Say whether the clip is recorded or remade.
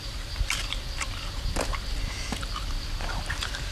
recorded